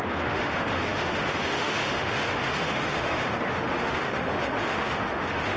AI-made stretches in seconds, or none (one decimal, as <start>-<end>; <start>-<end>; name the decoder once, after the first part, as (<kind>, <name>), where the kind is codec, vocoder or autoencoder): 0.0-5.6 (autoencoder, DAC-VAE)